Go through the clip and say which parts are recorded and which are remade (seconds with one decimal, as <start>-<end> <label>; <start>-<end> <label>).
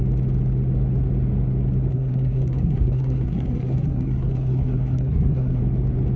0.0-1.9 recorded; 1.9-5.6 remade; 5.6-6.2 recorded